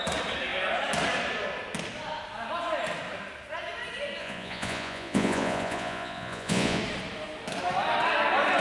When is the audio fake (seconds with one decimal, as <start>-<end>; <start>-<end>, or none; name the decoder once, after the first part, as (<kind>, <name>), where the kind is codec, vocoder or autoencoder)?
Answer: 4.2-6.8 (vocoder, Vocos)